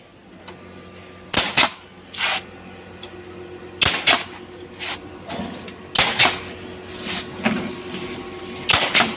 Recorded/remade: recorded